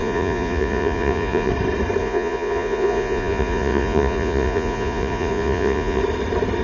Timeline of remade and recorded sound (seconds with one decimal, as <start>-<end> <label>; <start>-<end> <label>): 0.0-1.5 remade; 1.5-2.0 recorded; 2.0-6.0 remade; 6.0-6.6 recorded